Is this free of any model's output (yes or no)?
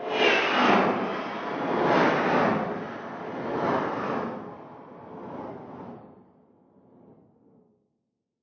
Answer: yes